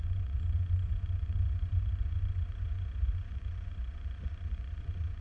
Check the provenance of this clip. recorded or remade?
remade